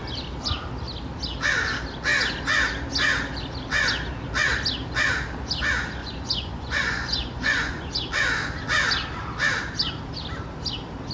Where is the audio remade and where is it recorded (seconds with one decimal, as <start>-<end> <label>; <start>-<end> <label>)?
0.0-6.0 recorded; 6.0-7.9 remade; 7.9-11.1 recorded